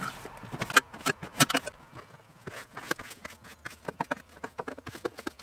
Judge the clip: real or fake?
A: real